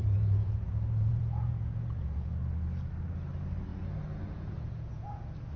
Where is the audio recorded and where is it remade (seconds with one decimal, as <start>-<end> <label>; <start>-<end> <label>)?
0.0-2.3 remade; 2.3-3.7 recorded; 3.7-5.6 remade